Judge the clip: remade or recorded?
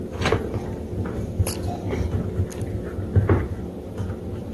recorded